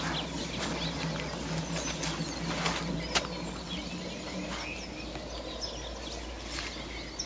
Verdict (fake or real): real